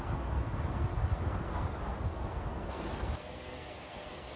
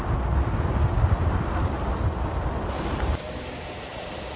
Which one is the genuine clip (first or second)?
second